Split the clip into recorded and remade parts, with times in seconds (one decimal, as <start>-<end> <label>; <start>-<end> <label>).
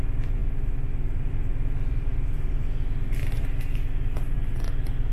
0.0-0.4 remade; 0.4-1.3 recorded; 1.3-2.1 remade; 2.1-5.1 recorded